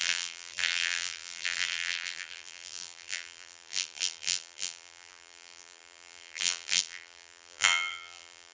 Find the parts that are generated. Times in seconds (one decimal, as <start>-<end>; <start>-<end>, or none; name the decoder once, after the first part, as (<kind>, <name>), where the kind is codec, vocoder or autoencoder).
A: 0.0-8.5 (vocoder, BigVGAN v2)